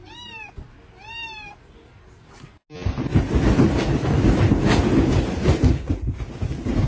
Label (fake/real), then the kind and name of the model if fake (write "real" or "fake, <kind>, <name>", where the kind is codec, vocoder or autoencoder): real